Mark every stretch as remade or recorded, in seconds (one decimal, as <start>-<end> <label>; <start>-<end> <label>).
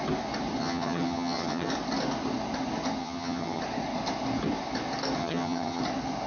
0.0-0.6 recorded; 0.6-1.7 remade; 1.7-3.0 recorded; 3.0-3.6 remade; 3.6-5.2 recorded; 5.2-5.8 remade; 5.8-6.3 recorded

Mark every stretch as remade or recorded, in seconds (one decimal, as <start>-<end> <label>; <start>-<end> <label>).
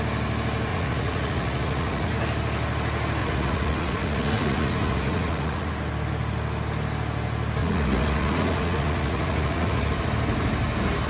0.0-0.7 recorded; 0.7-2.1 remade; 2.1-3.2 recorded; 3.2-5.7 remade; 5.7-7.6 recorded; 7.6-9.9 remade; 9.9-11.1 recorded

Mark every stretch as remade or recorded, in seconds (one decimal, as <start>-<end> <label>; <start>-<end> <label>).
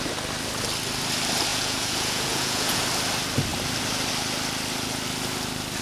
0.0-1.5 recorded; 1.5-2.8 remade; 2.8-5.8 recorded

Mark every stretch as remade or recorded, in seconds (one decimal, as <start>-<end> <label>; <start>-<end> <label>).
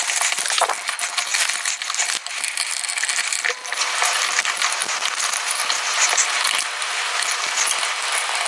0.0-8.5 recorded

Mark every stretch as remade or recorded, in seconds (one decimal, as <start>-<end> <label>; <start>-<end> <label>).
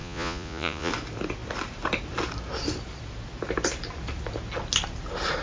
0.0-0.9 remade; 0.9-5.4 recorded